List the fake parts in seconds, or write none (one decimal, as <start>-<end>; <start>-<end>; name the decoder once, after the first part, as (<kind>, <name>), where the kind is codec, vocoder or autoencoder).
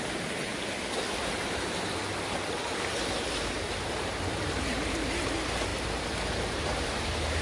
0.0-0.5 (vocoder, BigVGAN v2); 1.3-2.0; 2.7-5.7; 6.5-7.4